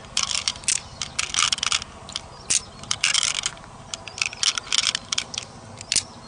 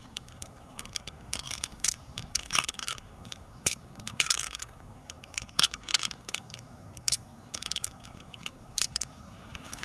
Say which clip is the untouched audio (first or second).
first